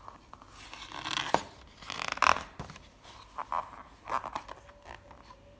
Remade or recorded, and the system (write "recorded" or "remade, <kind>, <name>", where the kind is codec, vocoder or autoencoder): recorded